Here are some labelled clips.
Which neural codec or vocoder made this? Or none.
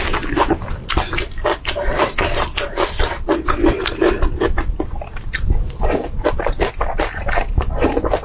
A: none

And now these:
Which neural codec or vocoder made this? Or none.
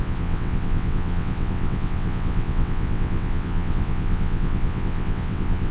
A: vocoder, WaveNeXt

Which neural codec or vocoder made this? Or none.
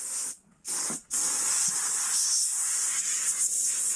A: none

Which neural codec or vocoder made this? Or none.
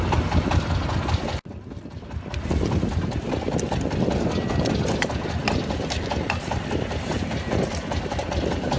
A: none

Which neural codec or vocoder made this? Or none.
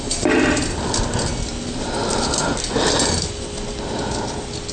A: none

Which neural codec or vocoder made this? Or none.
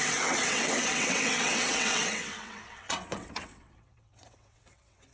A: vocoder, WaveNeXt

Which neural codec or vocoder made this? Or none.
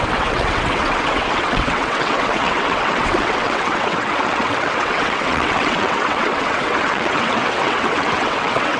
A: vocoder, WaveNeXt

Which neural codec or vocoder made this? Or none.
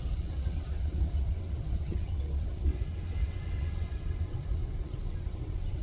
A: vocoder, WaveNeXt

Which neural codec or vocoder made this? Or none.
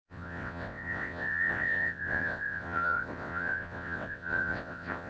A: vocoder, WaveNeXt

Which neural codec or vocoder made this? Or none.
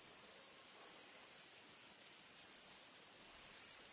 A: none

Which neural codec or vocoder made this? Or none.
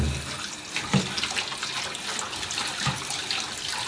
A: none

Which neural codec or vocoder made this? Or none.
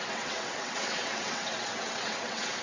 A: vocoder, WaveNeXt